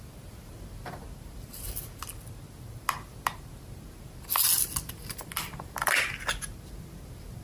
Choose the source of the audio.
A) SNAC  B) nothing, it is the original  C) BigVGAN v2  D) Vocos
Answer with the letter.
B